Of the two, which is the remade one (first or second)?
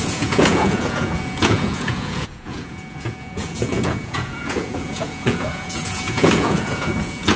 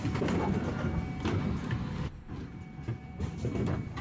first